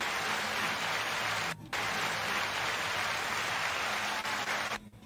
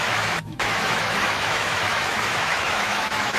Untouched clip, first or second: first